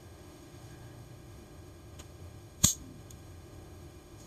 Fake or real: fake